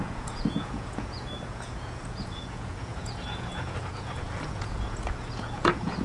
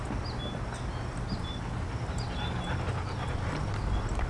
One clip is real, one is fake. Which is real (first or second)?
second